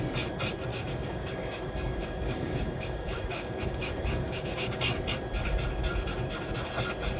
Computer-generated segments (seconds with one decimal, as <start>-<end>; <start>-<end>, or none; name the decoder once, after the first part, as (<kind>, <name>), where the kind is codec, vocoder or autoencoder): 0.7-4.8 (codec, DAC)